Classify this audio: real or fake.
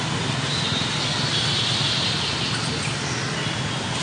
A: real